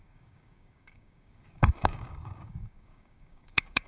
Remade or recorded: remade